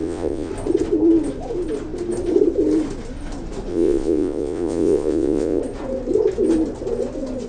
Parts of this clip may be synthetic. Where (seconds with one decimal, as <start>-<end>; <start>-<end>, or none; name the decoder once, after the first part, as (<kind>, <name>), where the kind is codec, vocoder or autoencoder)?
0.0-0.5 (vocoder, Vocos); 3.7-5.6